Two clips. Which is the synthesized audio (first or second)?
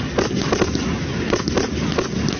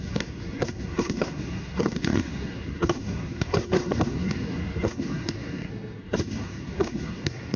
second